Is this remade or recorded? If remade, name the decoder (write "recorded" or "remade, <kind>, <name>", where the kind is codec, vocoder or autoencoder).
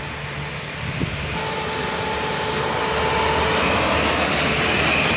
recorded